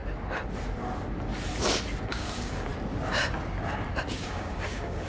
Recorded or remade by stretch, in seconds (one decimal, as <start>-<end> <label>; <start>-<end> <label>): 0.0-2.0 recorded; 2.0-2.7 remade; 2.7-4.1 recorded; 4.1-5.1 remade